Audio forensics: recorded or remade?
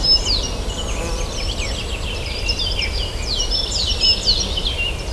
recorded